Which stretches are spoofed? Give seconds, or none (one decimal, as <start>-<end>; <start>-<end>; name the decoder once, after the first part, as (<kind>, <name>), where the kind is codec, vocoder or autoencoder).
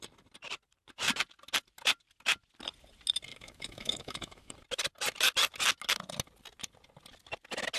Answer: 3.3-4.5 (autoencoder, DAC-VAE)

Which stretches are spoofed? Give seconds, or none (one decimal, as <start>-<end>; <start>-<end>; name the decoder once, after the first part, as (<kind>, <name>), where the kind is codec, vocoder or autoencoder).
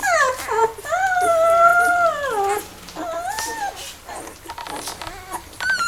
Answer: none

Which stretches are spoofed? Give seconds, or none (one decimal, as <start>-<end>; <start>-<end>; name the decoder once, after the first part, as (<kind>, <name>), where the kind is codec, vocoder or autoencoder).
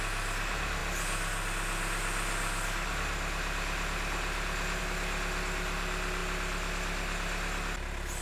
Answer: none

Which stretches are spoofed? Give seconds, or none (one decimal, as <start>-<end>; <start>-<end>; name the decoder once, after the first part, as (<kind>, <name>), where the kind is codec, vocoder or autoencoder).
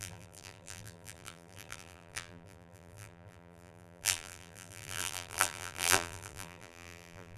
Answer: 0.0-7.4 (vocoder, BigVGAN v2)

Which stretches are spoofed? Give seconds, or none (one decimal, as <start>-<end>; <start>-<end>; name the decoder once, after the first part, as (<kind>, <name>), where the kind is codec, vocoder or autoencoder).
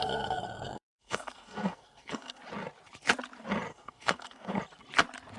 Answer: 0.0-2.4 (codec, SNAC); 3.7-4.6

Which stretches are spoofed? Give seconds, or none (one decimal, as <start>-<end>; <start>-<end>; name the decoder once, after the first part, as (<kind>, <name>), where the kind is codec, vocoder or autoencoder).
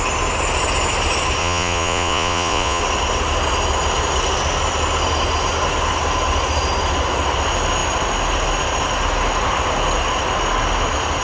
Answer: 1.4-2.8 (vocoder, Vocos)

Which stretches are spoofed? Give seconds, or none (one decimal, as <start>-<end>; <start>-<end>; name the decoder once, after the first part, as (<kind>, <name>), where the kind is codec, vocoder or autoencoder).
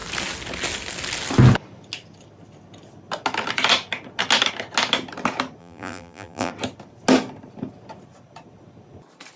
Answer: 5.6-6.5 (vocoder, BigVGAN v2)